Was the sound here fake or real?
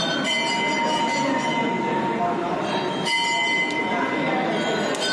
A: real